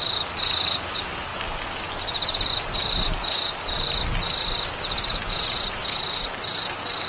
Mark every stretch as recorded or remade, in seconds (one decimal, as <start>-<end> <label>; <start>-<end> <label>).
0.0-1.3 remade; 1.3-5.3 recorded; 5.3-7.1 remade